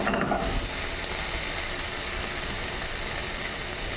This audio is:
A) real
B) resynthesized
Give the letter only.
A